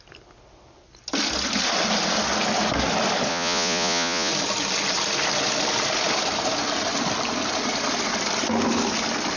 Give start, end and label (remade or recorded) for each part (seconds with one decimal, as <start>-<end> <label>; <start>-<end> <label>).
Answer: 0.0-3.3 recorded; 3.3-4.3 remade; 4.3-9.4 recorded